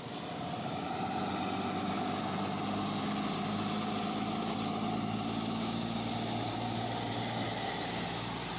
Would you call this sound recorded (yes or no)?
yes